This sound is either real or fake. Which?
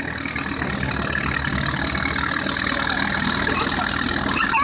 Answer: real